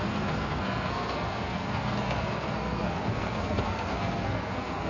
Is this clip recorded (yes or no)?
no